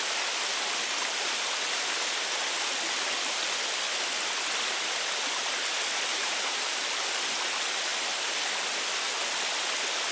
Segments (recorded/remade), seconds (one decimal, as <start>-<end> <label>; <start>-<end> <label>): 0.0-6.1 recorded; 6.1-6.8 remade; 6.8-10.1 recorded